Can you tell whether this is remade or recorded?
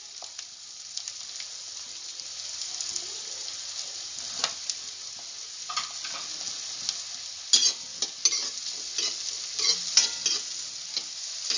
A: recorded